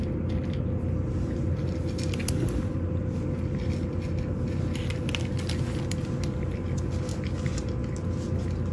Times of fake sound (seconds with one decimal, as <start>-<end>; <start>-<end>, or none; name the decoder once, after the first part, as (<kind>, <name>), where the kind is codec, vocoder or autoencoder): none